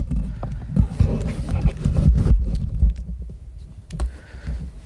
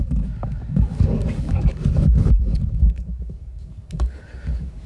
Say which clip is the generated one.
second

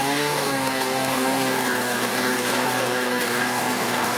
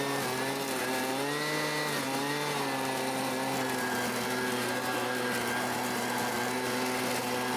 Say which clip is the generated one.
first